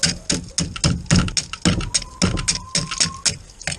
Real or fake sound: real